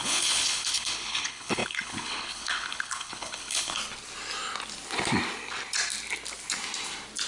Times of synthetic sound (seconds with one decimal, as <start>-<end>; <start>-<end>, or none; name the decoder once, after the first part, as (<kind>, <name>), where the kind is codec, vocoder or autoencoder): 0.0-3.8 (codec, HILCodec)